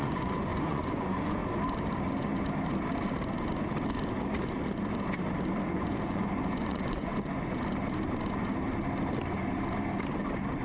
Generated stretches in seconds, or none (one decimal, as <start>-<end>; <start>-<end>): 0.0-1.4; 5.7-7.1